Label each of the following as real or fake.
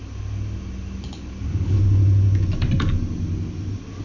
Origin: real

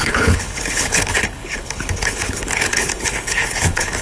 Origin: fake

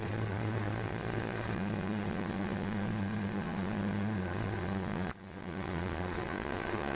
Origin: fake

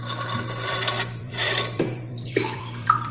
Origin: fake